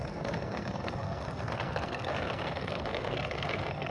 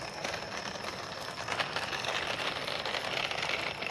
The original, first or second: second